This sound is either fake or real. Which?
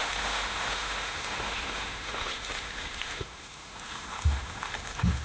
fake